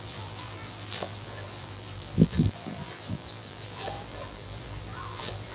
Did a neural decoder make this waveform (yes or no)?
yes